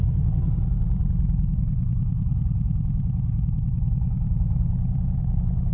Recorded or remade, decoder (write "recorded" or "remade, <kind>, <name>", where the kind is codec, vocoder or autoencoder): remade, vocoder, Vocos